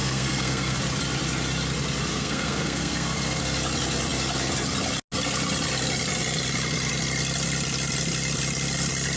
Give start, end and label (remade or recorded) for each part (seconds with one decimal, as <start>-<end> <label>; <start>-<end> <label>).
0.0-0.8 remade; 0.8-2.1 recorded; 2.1-3.4 remade; 3.4-9.2 recorded